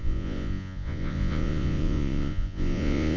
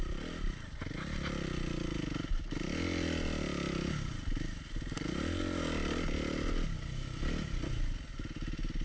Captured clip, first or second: second